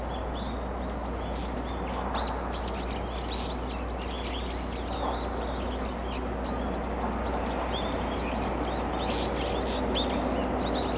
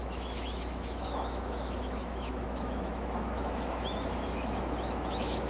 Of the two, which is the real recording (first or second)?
first